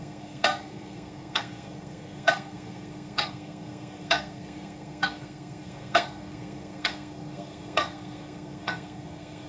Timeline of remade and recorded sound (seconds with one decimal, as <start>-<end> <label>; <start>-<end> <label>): 0.0-9.5 remade